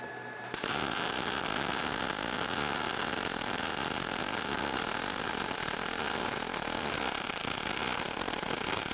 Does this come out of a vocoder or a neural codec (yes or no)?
no